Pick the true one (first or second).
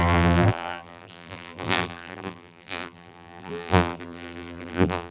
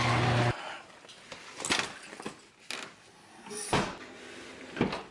second